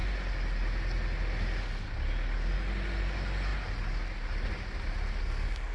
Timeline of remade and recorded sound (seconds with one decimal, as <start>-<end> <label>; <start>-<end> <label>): 0.0-5.7 recorded